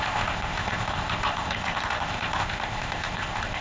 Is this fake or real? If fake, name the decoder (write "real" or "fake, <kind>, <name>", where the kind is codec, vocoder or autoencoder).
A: fake, codec, ZipCodec